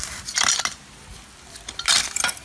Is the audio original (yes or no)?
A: yes